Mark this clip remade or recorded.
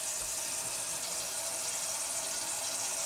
recorded